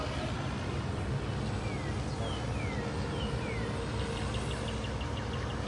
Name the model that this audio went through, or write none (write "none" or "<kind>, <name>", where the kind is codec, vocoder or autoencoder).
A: none